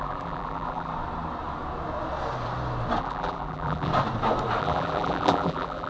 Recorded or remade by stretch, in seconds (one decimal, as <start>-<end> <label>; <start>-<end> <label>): 0.0-0.9 remade; 0.9-3.0 recorded; 3.0-3.9 remade; 3.9-4.6 recorded; 4.6-5.9 remade